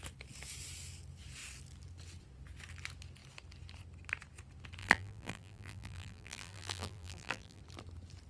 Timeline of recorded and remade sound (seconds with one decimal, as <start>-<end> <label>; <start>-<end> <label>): 0.0-4.8 recorded; 4.8-7.6 remade; 7.6-8.3 recorded